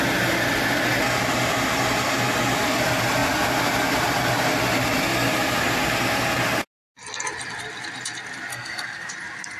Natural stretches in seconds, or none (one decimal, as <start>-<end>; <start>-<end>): 0.0-8.5; 9.1-9.6

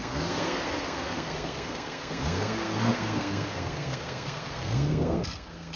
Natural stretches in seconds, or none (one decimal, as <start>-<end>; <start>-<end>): none

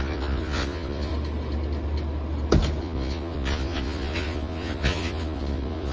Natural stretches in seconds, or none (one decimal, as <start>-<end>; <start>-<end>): 1.1-2.8

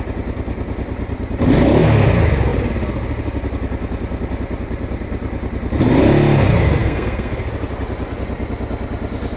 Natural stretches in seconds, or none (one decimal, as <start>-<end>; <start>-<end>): 0.0-6.8; 7.5-9.4

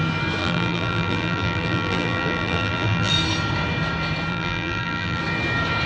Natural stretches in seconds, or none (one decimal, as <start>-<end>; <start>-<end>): 0.0-0.4; 3.1-4.3; 5.2-5.9

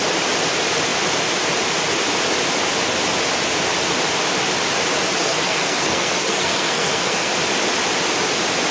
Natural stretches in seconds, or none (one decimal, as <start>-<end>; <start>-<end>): 0.0-5.2; 7.3-8.7

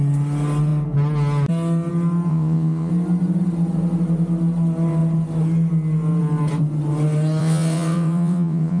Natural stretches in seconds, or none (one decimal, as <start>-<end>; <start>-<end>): 0.0-2.3; 2.9-7.4

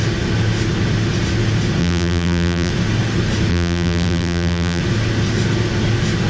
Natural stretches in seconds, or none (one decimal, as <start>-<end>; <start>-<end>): 0.0-1.8; 2.7-3.5; 4.8-6.3